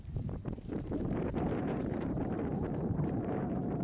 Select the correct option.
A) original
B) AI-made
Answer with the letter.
B